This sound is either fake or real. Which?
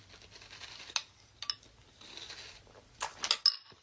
real